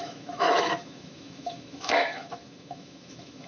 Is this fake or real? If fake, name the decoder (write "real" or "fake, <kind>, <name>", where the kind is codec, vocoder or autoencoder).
fake, autoencoder, DAC-VAE